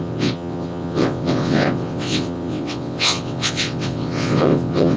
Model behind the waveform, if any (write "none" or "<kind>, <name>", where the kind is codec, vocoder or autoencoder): vocoder, WaveNeXt